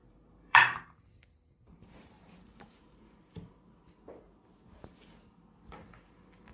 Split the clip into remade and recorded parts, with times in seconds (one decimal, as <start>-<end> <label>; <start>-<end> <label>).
0.0-3.9 remade; 3.9-6.5 recorded